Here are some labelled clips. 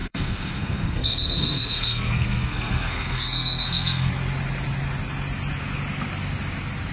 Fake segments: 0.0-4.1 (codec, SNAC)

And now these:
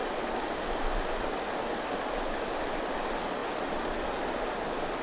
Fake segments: none

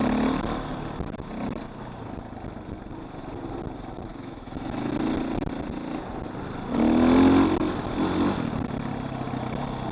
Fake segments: 4.1-4.9 (autoencoder, DAC-VAE)